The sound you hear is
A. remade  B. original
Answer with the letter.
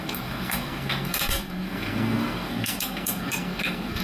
A